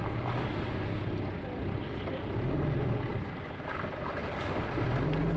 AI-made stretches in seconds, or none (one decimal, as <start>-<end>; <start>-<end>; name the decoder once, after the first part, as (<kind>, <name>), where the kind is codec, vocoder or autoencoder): none

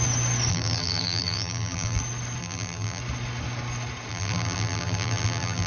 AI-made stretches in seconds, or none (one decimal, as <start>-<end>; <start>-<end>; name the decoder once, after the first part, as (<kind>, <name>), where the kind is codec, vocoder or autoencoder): 0.5-2.0 (vocoder, BigVGAN v2); 2.4-3.0; 4.1-5.7